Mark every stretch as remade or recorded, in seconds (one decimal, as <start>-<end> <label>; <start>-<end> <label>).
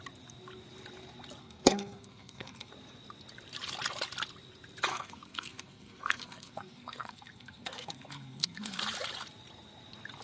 0.0-1.4 recorded; 1.4-2.7 remade; 2.7-4.9 recorded; 4.9-8.8 remade; 8.8-10.2 recorded